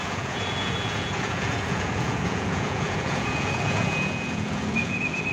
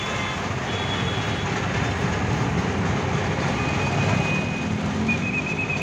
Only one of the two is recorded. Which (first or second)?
second